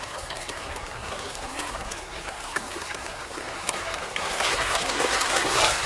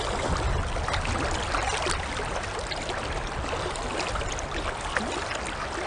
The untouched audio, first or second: second